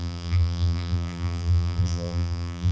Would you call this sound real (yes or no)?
no